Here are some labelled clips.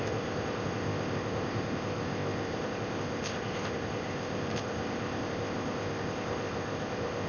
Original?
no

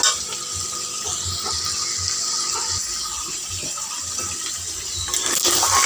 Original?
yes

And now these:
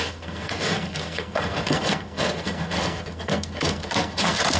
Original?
no